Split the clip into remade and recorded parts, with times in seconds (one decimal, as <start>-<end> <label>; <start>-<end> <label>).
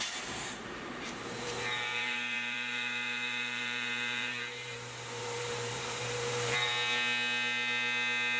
0.0-6.7 remade; 6.7-8.4 recorded